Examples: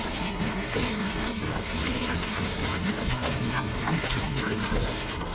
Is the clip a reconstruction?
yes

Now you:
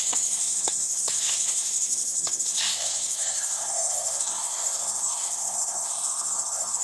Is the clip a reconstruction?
yes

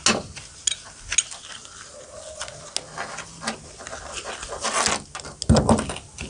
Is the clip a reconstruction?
no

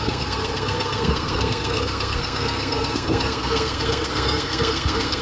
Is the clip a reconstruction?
yes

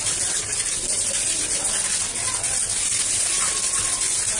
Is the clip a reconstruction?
no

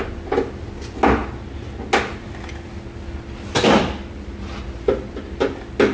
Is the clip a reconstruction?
no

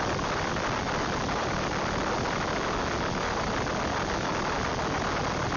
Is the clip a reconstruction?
no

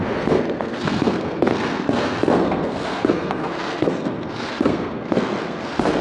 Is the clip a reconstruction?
yes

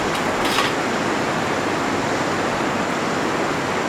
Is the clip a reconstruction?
no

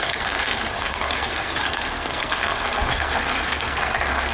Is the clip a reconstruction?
yes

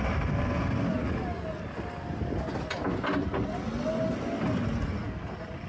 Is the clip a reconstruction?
no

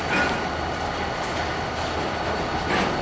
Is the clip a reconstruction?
no